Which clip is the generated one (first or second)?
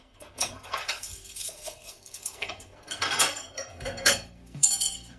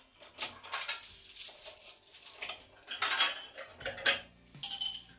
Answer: first